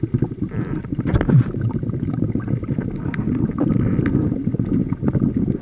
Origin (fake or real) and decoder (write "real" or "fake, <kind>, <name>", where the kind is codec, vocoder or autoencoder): real